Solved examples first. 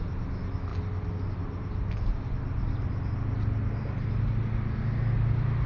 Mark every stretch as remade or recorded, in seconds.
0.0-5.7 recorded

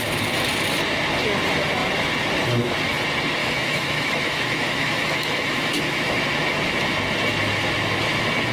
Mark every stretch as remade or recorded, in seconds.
0.0-3.4 recorded; 3.4-6.2 remade; 6.2-8.5 recorded

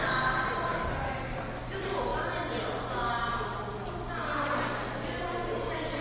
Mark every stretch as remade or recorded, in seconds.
0.0-6.0 recorded

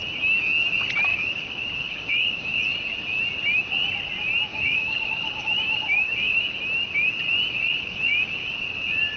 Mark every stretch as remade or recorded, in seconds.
0.0-1.1 recorded; 1.1-2.6 remade; 2.6-4.5 recorded; 4.5-6.4 remade; 6.4-7.7 recorded; 7.7-8.5 remade; 8.5-9.2 recorded

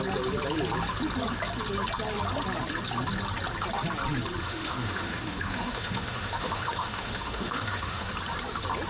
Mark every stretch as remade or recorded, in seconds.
0.0-4.4 recorded; 4.4-8.1 remade; 8.1-8.9 recorded

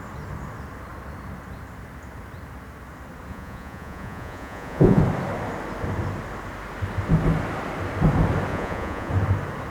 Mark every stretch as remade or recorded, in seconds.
0.0-3.3 recorded; 3.3-5.0 remade; 5.0-8.5 recorded; 8.5-9.1 remade; 9.1-9.7 recorded